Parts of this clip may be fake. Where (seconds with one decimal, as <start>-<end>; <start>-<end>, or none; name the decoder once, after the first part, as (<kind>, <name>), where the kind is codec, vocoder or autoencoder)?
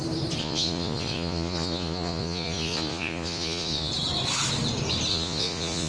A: 0.4-3.9 (vocoder, Vocos); 5.1-5.9